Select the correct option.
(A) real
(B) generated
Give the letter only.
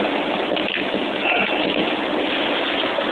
A